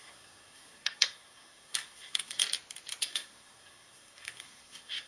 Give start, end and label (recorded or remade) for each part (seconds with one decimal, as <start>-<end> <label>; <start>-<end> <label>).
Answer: 0.0-2.4 remade; 2.4-3.0 recorded; 3.0-5.1 remade